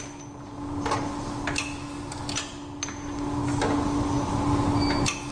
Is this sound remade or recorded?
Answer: recorded